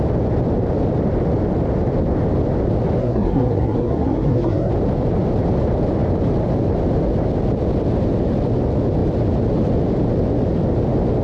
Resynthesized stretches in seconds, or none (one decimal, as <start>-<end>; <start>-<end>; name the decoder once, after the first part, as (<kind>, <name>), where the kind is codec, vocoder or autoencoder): 3.0-4.7 (codec, SNAC)